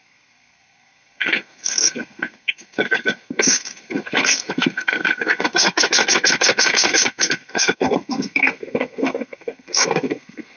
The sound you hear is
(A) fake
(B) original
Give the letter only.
A